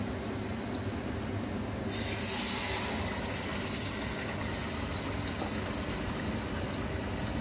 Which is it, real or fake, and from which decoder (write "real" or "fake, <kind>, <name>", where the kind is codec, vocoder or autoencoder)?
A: real